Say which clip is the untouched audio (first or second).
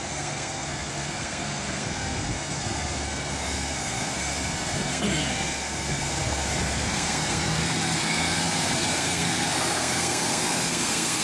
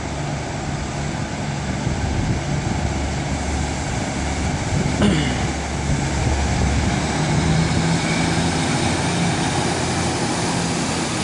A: second